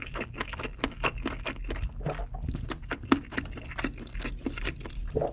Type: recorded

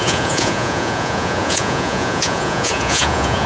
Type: remade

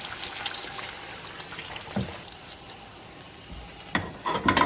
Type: recorded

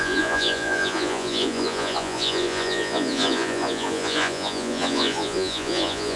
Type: remade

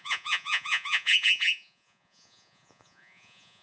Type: remade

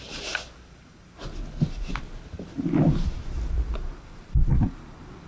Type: recorded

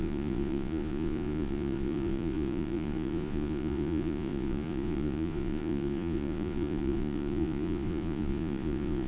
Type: remade